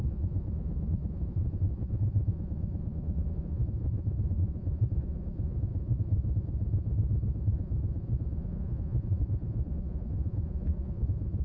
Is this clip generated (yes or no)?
yes